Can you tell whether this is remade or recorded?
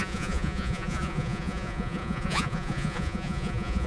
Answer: remade